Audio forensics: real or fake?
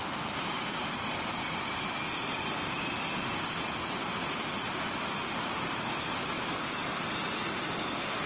real